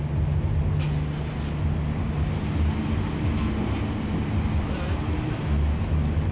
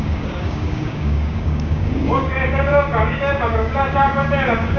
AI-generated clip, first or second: second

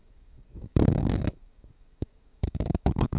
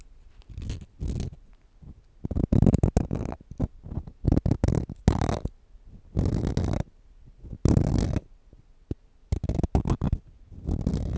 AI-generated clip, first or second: first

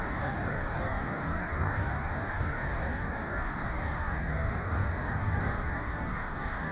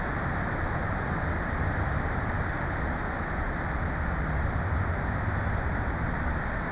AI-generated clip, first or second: first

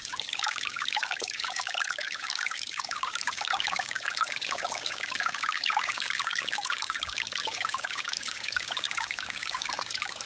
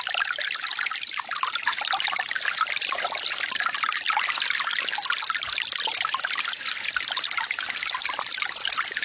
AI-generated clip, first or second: first